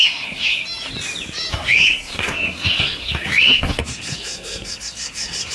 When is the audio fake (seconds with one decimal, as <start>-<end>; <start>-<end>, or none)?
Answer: 0.0-0.6; 1.5-5.5